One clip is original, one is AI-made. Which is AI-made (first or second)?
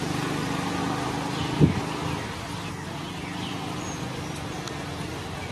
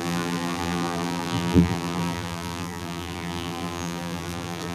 second